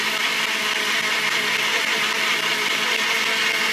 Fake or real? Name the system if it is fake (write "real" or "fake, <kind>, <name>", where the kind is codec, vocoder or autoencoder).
real